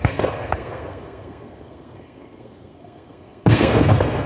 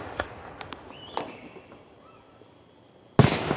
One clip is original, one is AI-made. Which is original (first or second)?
second